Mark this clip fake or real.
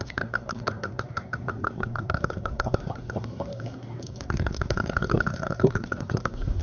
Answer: fake